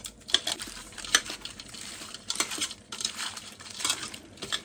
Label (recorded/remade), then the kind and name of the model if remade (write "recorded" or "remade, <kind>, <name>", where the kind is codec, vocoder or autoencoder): remade, vocoder, BigVGAN v2